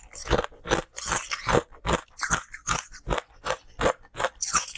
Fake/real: real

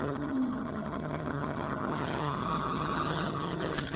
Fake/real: fake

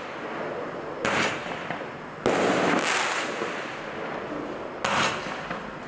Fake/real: real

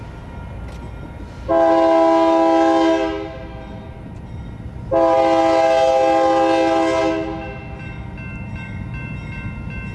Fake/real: real